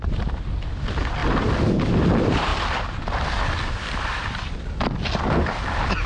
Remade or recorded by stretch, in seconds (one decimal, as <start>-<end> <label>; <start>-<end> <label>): 0.0-6.1 recorded